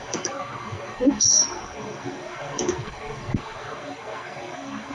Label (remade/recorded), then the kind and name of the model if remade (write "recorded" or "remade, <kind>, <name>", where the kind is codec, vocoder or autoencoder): remade, codec, SNAC